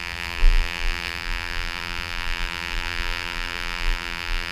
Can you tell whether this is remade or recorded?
remade